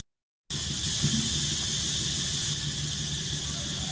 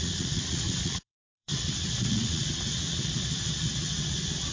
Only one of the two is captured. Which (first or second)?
first